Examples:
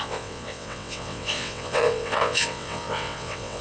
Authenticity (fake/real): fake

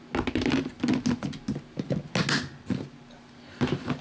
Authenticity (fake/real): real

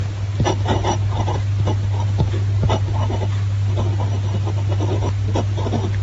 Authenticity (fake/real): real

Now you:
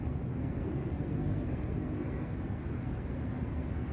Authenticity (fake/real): fake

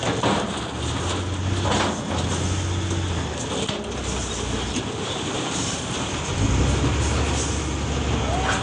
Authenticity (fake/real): real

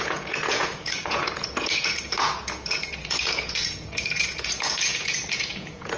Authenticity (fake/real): fake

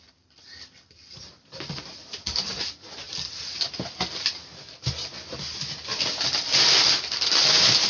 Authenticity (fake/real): real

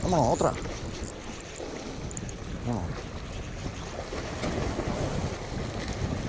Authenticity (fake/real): real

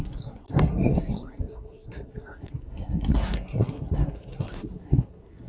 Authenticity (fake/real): fake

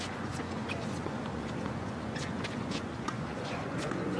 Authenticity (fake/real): fake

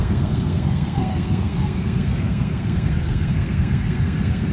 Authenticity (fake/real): fake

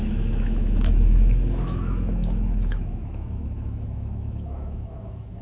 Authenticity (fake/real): fake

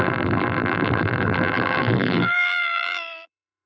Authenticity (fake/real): fake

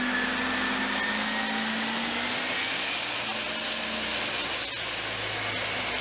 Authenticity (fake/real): real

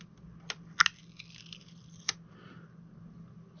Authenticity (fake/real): real